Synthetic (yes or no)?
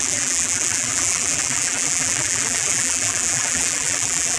yes